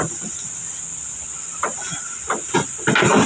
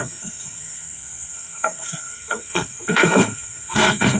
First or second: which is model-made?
second